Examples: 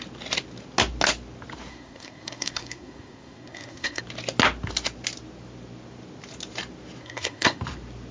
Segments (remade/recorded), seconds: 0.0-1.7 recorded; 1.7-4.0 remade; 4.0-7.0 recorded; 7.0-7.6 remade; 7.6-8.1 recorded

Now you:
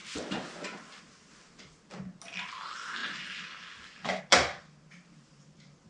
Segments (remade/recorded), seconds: 0.0-5.9 recorded

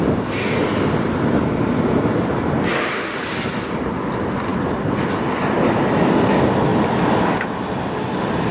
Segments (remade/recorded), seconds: 0.0-8.5 recorded

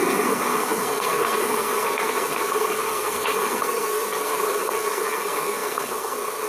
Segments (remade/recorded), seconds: 0.0-6.5 remade

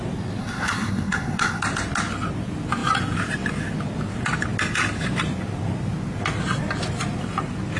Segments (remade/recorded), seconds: 0.0-0.4 recorded; 0.4-1.6 remade; 1.6-7.8 recorded